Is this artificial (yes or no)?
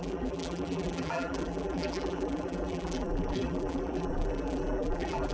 yes